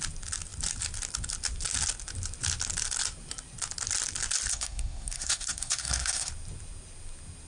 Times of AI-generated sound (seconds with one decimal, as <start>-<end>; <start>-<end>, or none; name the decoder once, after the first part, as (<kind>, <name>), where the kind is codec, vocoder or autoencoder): 4.5-6.3 (codec, SNAC)